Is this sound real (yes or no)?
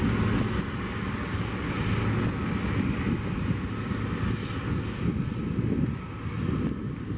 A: yes